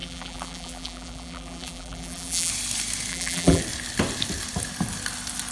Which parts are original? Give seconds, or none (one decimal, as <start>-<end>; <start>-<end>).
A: 2.5-3.1; 3.6-5.5